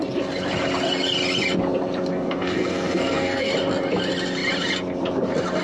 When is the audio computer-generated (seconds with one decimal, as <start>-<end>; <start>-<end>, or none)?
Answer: 2.1-3.5